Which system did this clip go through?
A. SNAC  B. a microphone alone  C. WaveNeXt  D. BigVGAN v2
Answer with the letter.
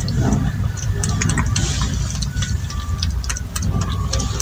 D